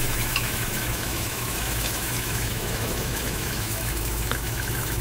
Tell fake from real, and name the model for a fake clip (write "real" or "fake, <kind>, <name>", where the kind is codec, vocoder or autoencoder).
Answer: fake, autoencoder, DAC-VAE